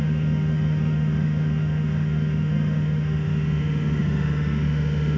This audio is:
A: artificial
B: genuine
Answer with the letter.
A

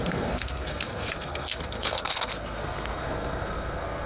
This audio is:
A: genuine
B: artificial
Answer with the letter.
B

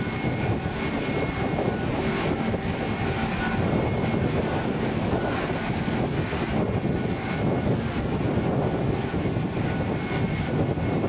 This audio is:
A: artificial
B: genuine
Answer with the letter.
B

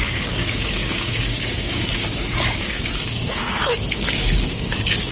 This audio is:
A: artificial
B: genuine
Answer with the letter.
A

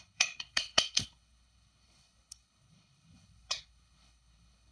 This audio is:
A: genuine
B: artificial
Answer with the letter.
B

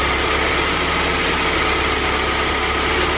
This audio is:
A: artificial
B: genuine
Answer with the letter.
B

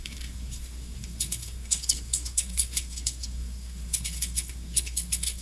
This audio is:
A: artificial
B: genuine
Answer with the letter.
A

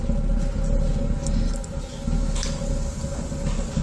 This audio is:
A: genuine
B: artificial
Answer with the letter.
A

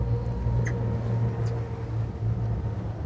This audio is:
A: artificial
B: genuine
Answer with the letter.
B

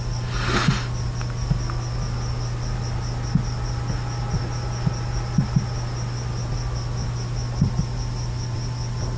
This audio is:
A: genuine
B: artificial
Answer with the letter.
A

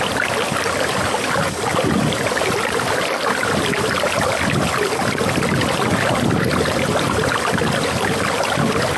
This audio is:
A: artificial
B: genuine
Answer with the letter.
B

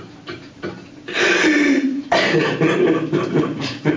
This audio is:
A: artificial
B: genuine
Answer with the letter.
A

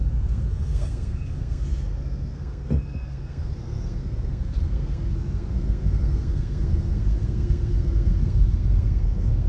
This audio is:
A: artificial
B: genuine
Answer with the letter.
A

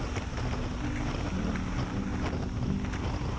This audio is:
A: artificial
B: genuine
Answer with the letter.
B